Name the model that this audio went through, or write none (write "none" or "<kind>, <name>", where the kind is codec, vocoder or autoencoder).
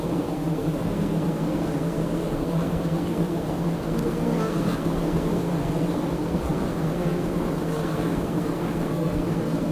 codec, SNAC